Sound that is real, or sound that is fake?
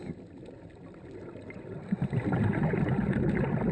real